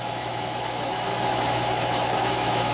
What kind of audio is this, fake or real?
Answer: fake